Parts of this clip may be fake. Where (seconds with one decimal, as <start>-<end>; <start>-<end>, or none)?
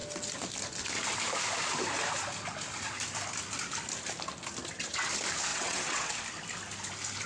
5.5-6.2